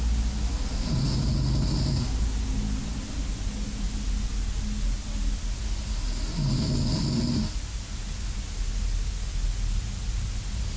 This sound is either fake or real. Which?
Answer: real